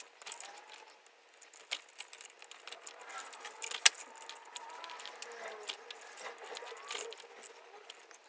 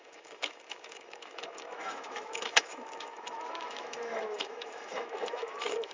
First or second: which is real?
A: first